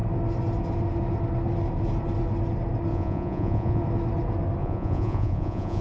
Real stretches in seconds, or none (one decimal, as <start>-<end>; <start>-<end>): 0.0-2.9; 3.8-4.6